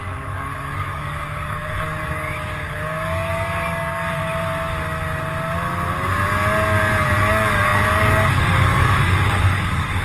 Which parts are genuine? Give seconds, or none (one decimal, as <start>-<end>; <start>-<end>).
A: 4.2-7.3

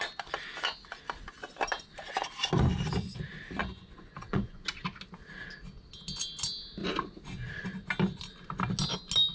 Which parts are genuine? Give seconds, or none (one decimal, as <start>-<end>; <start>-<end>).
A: 0.0-3.6; 4.6-9.3

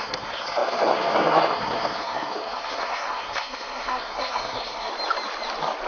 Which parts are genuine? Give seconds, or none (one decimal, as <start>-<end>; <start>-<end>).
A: 4.9-5.9